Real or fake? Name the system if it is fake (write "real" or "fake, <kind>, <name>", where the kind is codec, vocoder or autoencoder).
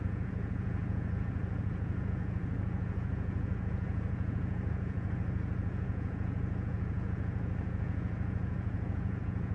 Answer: fake, vocoder, Vocos